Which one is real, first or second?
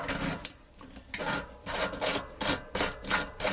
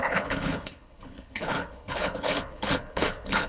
first